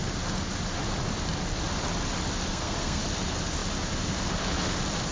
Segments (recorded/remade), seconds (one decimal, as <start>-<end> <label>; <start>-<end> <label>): 0.0-2.5 recorded; 2.5-3.0 remade; 3.0-5.1 recorded